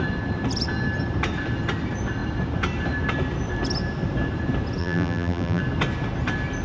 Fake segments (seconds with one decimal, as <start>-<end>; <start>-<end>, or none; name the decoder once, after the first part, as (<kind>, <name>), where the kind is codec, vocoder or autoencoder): 4.8-5.6 (vocoder, BigVGAN v2)